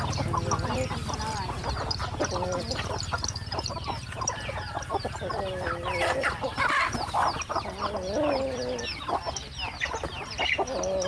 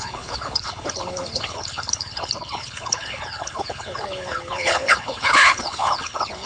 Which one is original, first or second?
first